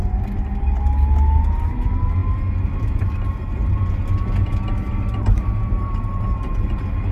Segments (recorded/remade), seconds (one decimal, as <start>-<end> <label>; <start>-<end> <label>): 0.0-7.1 recorded